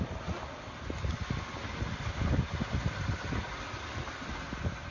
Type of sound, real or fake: real